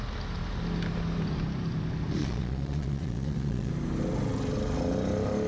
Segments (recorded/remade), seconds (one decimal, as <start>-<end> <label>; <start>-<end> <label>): 0.0-2.2 recorded; 2.2-3.7 remade; 3.7-5.5 recorded

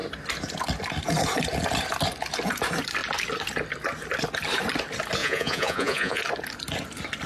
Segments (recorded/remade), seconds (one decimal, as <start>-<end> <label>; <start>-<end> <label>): 0.0-5.2 recorded; 5.2-6.2 remade; 6.2-7.3 recorded

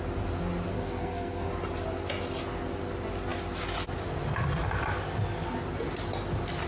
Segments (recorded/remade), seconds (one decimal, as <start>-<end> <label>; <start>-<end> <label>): 0.0-0.7 recorded; 0.7-1.5 remade; 1.5-6.7 recorded

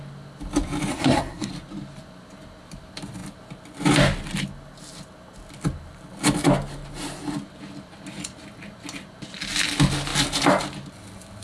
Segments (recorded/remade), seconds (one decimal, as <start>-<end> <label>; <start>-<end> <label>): 0.0-0.9 recorded; 0.9-1.5 remade; 1.5-11.4 recorded